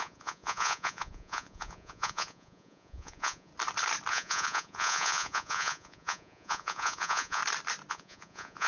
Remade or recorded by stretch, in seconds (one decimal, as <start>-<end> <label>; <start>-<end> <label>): 0.0-3.5 remade; 3.5-4.1 recorded; 4.1-7.4 remade; 7.4-7.9 recorded; 7.9-8.7 remade